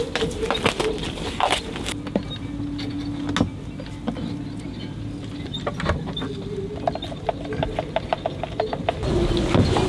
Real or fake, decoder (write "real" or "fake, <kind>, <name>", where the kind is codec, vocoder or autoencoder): real